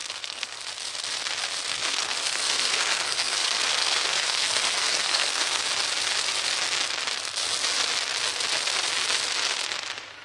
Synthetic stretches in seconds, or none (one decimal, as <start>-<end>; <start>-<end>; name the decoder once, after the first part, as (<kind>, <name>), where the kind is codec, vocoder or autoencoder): 0.0-0.6 (codec, SNAC); 1.7-5.6